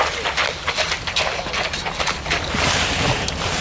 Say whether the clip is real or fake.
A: real